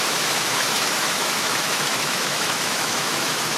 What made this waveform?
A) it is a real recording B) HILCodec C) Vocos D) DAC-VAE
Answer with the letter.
D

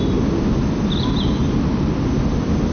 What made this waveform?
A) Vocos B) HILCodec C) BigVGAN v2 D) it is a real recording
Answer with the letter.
D